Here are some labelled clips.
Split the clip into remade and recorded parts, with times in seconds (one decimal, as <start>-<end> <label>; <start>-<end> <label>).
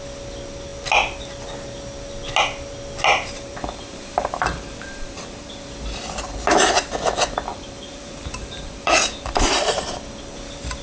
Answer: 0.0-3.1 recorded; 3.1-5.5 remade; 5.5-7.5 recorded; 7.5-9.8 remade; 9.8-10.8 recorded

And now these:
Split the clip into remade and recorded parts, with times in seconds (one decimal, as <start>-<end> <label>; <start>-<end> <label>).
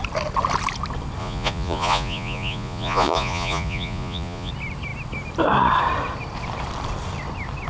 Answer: 0.0-1.2 recorded; 1.2-4.5 remade; 4.5-7.7 recorded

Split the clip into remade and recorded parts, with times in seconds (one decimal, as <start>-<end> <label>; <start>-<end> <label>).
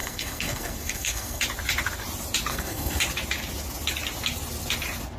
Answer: 0.0-1.4 remade; 1.4-2.5 recorded; 2.5-3.0 remade; 3.0-5.2 recorded